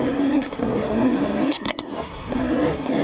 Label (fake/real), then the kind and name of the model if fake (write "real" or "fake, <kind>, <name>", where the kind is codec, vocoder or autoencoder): fake, codec, SNAC